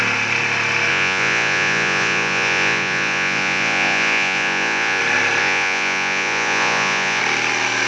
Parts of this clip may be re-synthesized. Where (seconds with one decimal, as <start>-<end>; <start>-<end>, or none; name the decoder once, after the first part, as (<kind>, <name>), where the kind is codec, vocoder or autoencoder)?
0.9-5.0 (vocoder, Vocos); 5.4-7.2